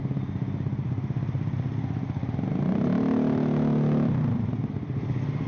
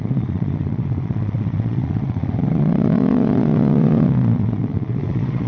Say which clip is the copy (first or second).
second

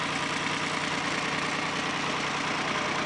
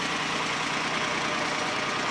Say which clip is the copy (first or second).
second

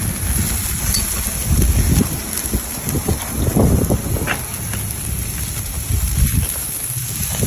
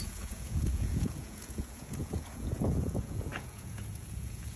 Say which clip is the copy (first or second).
second